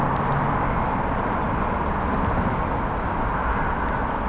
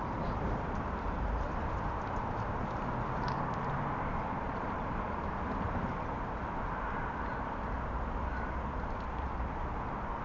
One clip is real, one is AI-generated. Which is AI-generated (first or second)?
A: second